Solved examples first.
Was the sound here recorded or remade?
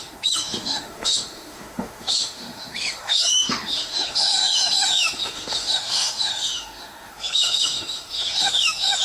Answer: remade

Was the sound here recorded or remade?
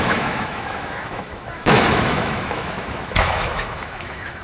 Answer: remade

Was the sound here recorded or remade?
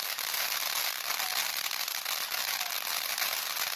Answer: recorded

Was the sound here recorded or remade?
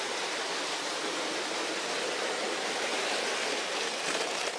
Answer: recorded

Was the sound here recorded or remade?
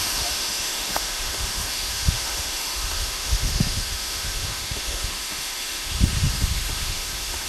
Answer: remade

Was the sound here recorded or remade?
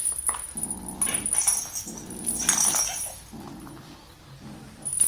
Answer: recorded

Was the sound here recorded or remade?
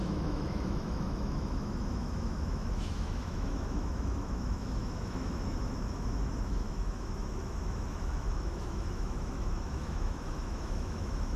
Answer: remade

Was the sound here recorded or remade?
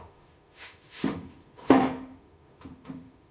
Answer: remade